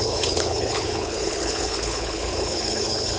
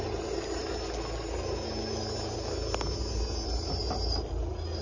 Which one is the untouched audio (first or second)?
second